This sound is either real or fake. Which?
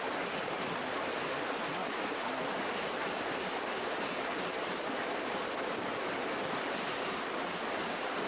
real